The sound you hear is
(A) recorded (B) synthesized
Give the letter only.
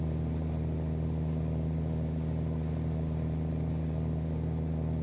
B